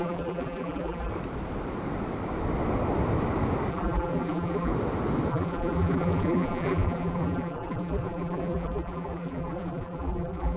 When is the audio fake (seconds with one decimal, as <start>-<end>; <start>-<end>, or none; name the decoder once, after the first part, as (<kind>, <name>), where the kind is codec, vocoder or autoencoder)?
0.0-1.1 (vocoder, BigVGAN v2); 3.7-4.7; 5.3-10.6